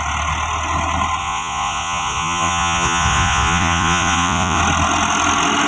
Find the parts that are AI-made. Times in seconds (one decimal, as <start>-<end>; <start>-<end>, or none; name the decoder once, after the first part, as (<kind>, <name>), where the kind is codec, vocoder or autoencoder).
1.2-4.6 (vocoder, Vocos)